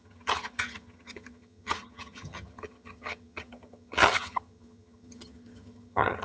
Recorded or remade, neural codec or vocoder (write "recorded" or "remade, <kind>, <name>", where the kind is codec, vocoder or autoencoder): remade, vocoder, HiFi-GAN